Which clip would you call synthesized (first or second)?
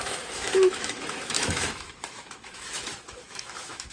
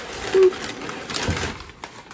first